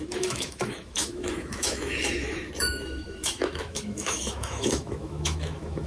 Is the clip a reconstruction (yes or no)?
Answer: yes